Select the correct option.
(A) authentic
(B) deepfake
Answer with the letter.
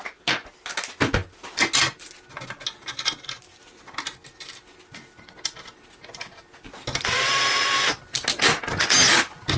A